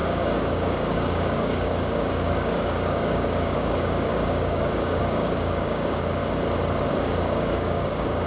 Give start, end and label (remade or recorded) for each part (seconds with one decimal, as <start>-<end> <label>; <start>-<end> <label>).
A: 0.0-6.2 remade; 6.2-6.9 recorded; 6.9-8.3 remade